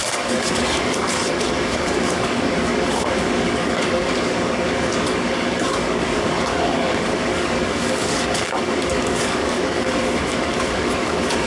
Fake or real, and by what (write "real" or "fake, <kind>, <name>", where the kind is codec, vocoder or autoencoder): fake, codec, DAC